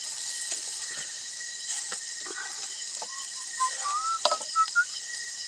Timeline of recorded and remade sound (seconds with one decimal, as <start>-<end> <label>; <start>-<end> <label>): 0.0-0.7 recorded; 0.7-1.8 remade; 1.8-3.1 recorded; 3.1-3.7 remade; 3.7-4.2 recorded; 4.2-5.5 remade

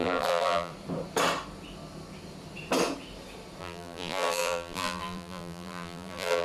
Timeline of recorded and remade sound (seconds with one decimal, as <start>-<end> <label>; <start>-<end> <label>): 0.0-0.7 remade; 0.7-3.6 recorded; 3.6-6.4 remade

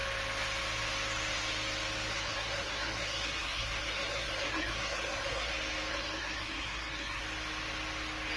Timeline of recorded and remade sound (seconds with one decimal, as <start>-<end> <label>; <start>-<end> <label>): 0.0-2.1 recorded; 2.1-5.5 remade; 5.5-5.9 recorded; 5.9-7.2 remade; 7.2-8.4 recorded